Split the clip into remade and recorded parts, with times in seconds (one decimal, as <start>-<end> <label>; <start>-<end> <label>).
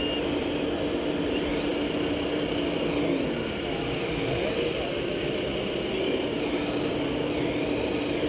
0.0-8.3 recorded